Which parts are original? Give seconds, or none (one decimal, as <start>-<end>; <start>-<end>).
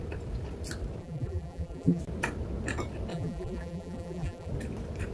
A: 0.0-1.0; 2.0-3.1; 4.5-5.1